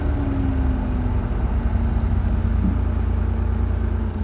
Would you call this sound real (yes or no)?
yes